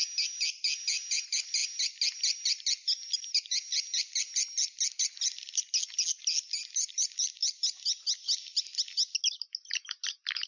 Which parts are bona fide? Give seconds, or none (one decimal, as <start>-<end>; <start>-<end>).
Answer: 0.0-10.5